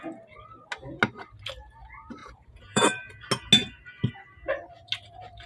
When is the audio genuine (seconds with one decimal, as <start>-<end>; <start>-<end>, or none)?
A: 0.0-2.2; 3.1-5.5